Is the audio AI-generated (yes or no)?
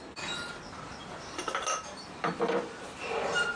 yes